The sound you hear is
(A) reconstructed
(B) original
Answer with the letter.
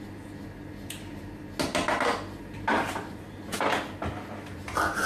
B